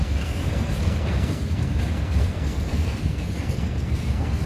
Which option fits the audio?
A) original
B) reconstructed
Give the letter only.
B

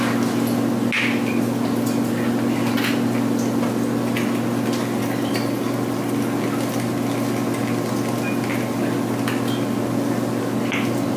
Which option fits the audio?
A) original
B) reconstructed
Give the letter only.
A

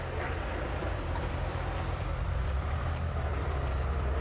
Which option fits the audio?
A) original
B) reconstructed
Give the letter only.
B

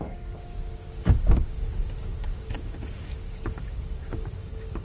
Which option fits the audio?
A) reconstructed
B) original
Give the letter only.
A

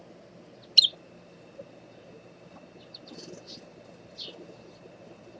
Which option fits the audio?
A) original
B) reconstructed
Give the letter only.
A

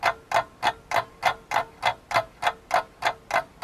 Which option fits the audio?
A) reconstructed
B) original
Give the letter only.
B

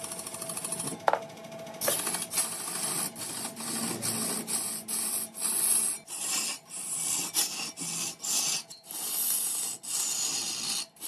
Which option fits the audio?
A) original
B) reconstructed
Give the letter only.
A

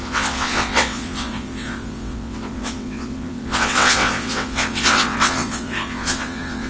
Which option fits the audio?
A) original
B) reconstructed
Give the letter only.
B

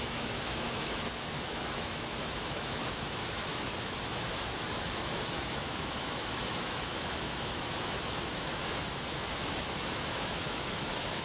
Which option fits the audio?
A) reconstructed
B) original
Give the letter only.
A